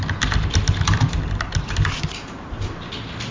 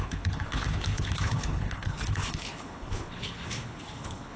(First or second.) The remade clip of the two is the second